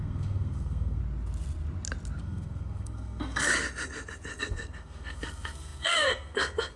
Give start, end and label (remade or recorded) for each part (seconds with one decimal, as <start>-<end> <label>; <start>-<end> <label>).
0.0-1.0 remade; 1.0-2.2 recorded; 2.2-3.5 remade; 3.5-4.4 recorded; 4.4-6.8 remade